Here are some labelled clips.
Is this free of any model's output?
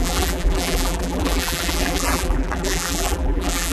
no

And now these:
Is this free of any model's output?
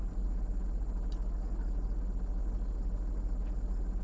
yes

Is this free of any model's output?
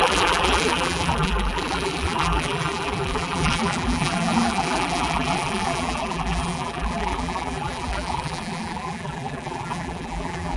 no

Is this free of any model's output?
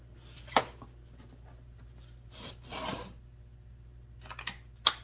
yes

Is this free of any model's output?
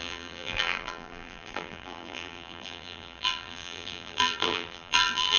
no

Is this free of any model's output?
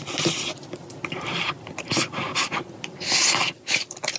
yes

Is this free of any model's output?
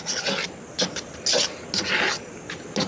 yes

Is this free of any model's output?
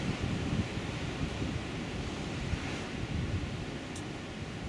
yes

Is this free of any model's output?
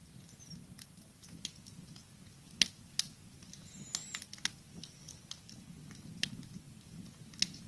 yes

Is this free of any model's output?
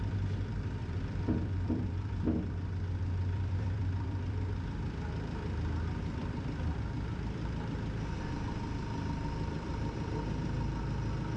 no